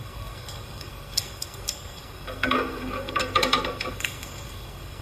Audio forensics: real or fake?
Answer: fake